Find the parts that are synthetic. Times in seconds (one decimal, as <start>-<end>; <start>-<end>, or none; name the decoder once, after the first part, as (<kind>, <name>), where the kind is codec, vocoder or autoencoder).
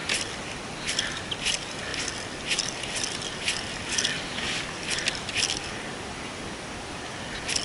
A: none